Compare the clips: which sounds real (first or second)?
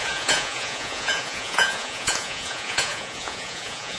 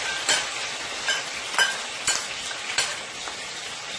second